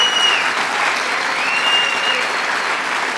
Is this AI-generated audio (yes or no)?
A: no